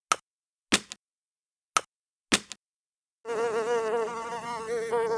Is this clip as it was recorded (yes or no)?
yes